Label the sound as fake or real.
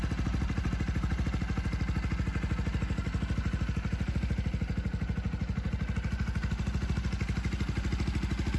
real